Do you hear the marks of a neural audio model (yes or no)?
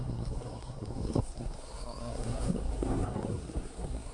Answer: yes